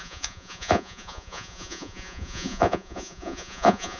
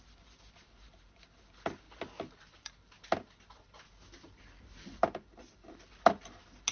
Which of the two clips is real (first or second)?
second